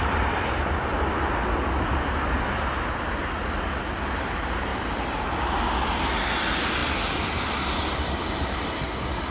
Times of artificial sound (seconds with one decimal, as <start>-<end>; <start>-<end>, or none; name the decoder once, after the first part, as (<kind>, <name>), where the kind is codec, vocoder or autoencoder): none